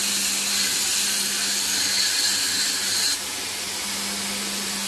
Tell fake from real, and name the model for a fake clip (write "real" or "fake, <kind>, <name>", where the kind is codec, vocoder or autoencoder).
real